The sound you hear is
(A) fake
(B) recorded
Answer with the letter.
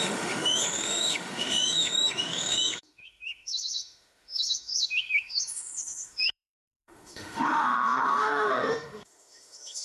A